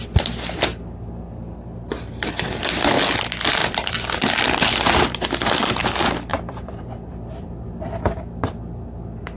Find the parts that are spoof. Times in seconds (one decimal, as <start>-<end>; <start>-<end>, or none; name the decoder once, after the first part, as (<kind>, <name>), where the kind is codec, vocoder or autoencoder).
3.6-4.4 (vocoder, BigVGAN v2); 6.3-9.4

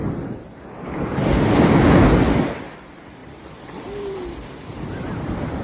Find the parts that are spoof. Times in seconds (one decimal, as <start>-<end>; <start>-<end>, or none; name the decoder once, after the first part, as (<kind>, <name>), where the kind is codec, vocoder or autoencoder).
3.2-5.6 (vocoder, BigVGAN v2)

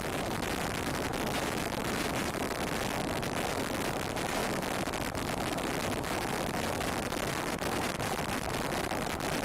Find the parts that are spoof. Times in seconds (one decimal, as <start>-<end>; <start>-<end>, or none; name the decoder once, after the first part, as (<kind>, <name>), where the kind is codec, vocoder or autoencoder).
none

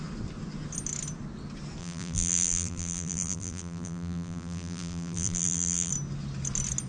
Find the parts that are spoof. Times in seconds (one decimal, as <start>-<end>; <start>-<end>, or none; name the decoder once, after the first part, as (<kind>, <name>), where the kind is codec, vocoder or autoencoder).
1.8-5.9 (vocoder, BigVGAN v2)

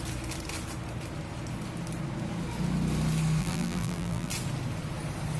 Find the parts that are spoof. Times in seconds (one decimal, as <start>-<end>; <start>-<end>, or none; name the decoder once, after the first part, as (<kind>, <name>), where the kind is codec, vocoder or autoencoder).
3.4-4.3 (vocoder, BigVGAN v2)